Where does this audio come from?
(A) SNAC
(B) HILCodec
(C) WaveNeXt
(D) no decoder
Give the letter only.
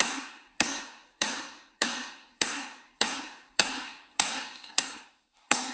A